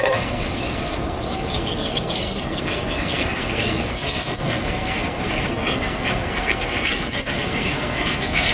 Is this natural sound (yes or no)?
no